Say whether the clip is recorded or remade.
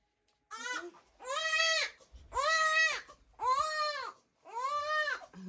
recorded